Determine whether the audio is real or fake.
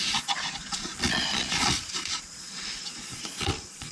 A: fake